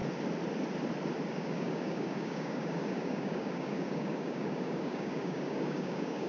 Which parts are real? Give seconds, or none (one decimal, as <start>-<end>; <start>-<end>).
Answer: 0.0-1.3